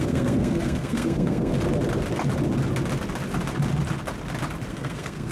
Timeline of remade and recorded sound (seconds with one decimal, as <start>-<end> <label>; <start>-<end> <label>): 0.0-1.5 remade; 1.5-4.7 recorded; 4.7-5.3 remade